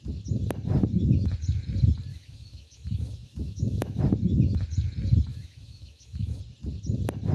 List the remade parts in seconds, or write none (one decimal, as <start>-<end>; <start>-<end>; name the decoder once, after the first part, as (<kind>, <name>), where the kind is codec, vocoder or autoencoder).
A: 2.1-4.0 (autoencoder, DAC-VAE); 5.3-6.4